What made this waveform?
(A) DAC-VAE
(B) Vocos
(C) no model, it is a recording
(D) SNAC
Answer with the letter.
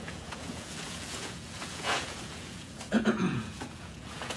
B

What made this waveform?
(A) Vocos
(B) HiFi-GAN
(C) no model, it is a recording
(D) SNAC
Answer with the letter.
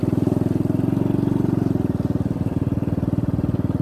C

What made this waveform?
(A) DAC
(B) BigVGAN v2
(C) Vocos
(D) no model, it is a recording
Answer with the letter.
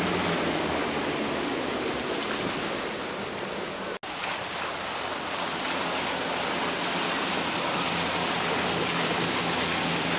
D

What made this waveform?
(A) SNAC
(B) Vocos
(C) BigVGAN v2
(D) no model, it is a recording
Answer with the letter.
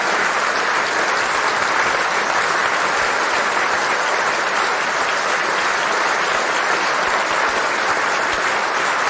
D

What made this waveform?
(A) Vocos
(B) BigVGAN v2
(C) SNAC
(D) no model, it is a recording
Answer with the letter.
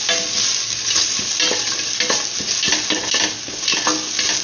D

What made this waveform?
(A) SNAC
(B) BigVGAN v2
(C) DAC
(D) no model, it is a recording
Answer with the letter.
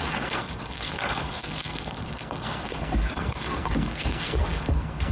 A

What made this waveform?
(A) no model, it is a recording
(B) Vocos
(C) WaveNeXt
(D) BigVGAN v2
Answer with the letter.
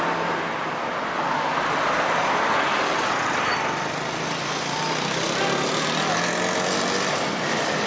A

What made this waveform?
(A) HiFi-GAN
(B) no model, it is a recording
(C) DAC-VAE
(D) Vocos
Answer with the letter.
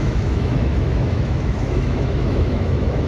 C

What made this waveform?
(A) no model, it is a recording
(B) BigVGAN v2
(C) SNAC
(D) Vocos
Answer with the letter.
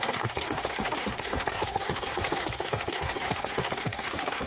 C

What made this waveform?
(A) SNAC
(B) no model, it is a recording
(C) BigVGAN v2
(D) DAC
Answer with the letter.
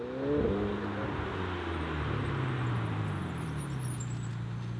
B